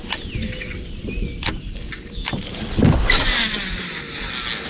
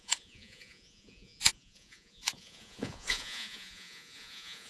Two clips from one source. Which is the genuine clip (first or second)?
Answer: first